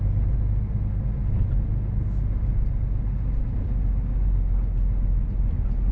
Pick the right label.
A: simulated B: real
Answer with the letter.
B